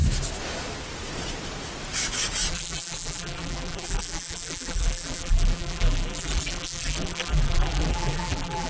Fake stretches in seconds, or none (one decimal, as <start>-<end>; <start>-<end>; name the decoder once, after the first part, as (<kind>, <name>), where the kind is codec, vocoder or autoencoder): 2.5-8.7 (vocoder, BigVGAN v2)